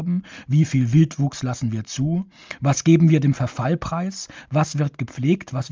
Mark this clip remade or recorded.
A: recorded